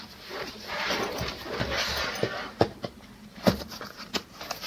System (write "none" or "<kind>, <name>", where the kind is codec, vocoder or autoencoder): vocoder, BigVGAN v2